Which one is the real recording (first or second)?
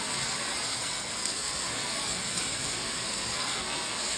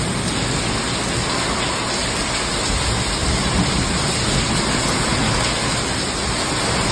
second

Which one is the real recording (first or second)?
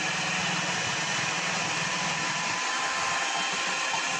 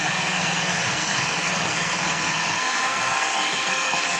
first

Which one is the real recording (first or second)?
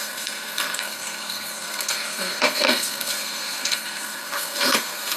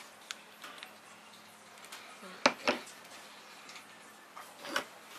second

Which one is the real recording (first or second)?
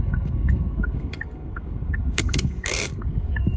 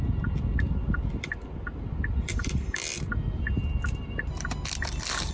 second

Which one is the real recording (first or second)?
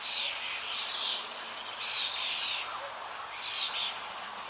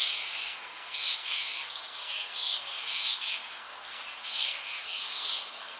first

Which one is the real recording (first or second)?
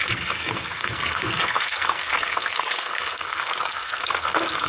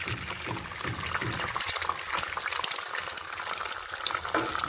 second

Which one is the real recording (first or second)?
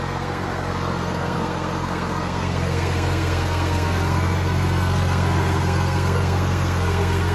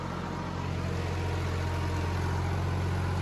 second